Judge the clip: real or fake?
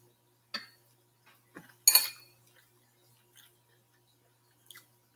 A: real